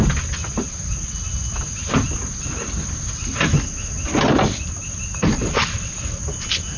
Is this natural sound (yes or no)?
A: yes